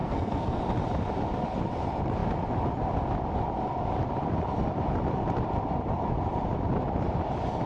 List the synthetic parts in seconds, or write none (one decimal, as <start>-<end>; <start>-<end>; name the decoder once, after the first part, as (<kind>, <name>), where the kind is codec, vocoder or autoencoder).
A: 0.0-0.6 (codec, SNAC)